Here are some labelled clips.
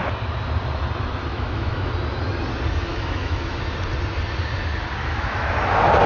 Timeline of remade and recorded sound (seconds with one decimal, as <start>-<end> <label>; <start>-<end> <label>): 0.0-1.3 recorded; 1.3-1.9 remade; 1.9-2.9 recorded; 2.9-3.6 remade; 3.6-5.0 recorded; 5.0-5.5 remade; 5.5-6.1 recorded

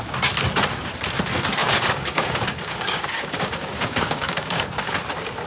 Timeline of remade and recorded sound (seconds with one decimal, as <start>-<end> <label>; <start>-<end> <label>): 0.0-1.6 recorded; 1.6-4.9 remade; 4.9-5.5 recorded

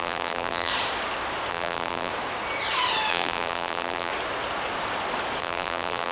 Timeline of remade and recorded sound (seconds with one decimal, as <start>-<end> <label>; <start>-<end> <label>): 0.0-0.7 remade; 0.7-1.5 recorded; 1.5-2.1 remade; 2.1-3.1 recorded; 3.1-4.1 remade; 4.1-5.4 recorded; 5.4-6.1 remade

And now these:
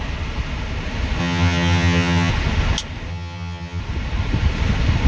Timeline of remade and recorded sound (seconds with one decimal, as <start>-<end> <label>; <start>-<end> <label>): 0.0-1.2 recorded; 1.2-2.3 remade; 2.3-3.1 recorded; 3.1-3.8 remade; 3.8-5.1 recorded

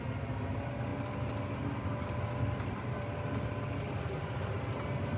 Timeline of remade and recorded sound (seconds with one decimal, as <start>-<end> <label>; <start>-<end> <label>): 0.0-5.2 recorded

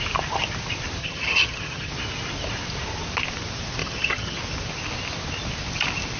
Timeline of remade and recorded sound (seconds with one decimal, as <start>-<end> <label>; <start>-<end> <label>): 0.0-1.0 recorded; 1.0-1.9 remade; 1.9-3.8 recorded; 3.8-4.4 remade; 4.4-6.2 recorded